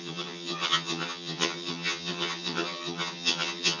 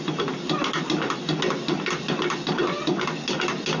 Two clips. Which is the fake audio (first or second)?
first